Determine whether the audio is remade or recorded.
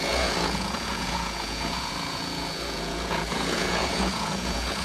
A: remade